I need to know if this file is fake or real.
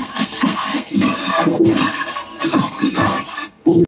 fake